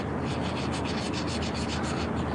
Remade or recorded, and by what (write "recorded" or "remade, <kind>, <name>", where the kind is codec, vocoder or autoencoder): recorded